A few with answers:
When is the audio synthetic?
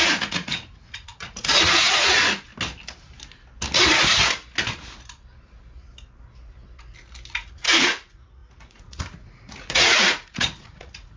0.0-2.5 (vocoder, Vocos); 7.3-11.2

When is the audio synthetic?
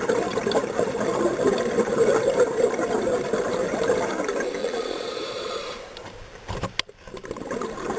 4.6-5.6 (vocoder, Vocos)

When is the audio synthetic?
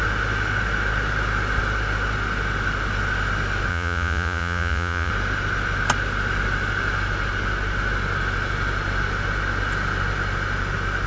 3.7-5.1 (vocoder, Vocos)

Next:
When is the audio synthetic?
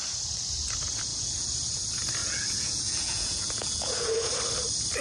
1.1-1.8 (vocoder, Vocos); 2.2-4.3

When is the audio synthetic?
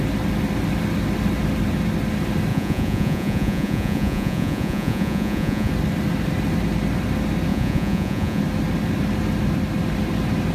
2.5-5.7 (vocoder, Vocos); 7.5-8.4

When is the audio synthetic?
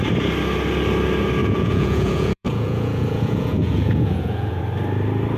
1.4-4.6 (vocoder, Vocos)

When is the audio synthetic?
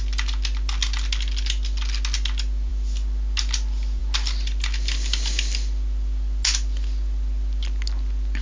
none